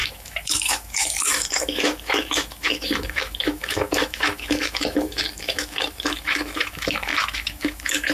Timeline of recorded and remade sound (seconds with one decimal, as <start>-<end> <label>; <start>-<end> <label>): 0.0-8.1 remade